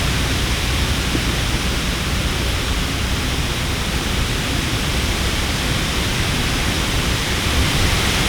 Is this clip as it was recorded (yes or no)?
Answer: no